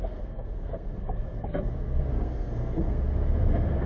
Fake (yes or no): yes